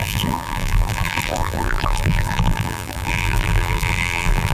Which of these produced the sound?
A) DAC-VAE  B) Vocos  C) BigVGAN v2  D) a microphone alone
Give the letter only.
C